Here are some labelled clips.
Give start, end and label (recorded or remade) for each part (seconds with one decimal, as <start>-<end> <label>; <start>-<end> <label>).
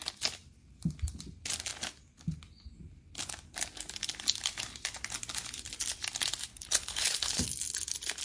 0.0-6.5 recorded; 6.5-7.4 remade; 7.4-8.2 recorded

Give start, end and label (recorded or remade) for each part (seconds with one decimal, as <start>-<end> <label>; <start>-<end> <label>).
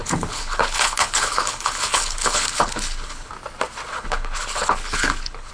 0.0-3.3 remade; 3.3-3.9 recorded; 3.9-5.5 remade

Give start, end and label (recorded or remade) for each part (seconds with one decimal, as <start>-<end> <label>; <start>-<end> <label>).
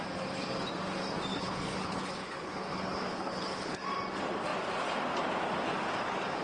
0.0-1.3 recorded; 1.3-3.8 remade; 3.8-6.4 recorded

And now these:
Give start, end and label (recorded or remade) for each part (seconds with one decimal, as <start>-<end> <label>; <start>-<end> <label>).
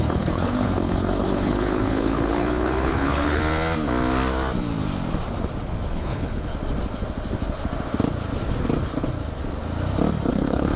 0.0-3.4 remade; 3.4-5.9 recorded; 5.9-6.5 remade; 6.5-10.3 recorded; 10.3-10.8 remade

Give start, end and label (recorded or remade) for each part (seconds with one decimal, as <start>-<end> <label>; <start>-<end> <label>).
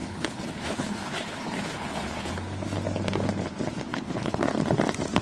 0.0-2.3 remade; 2.3-3.9 recorded; 3.9-4.5 remade; 4.5-5.2 recorded